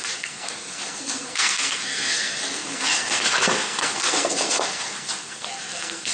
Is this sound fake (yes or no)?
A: yes